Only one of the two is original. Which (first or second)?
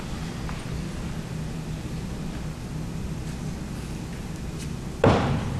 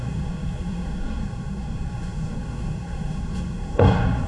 first